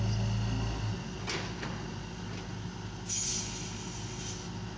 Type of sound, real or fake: real